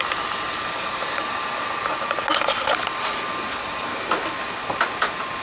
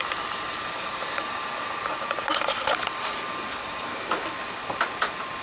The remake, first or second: second